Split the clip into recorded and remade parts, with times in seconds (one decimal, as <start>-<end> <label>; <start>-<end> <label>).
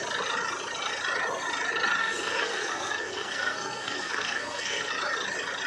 0.0-2.0 recorded; 2.0-4.9 remade; 4.9-5.7 recorded